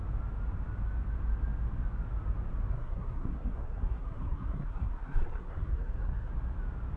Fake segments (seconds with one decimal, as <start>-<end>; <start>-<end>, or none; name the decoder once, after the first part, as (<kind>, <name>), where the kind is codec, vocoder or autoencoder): 2.7-6.3 (codec, SNAC)